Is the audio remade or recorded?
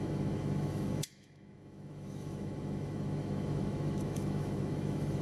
remade